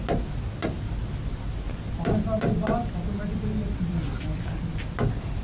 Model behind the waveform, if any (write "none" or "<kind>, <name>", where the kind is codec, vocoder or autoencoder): none